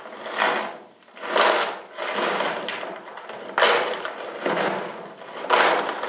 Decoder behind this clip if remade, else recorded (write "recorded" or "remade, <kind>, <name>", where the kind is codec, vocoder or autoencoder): recorded